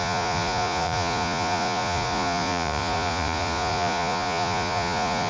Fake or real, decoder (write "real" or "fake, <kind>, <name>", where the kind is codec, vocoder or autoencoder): fake, vocoder, Vocos